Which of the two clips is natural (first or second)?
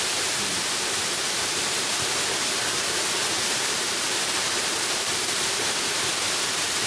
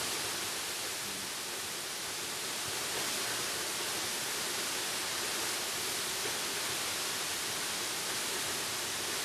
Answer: second